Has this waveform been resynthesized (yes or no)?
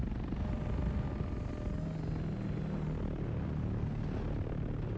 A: no